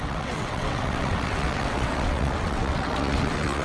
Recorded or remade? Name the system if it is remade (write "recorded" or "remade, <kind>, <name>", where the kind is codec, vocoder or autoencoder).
remade, vocoder, WaveNeXt